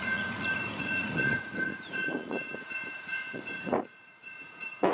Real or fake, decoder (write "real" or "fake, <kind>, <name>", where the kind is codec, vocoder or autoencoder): fake, vocoder, Vocos